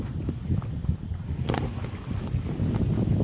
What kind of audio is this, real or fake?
real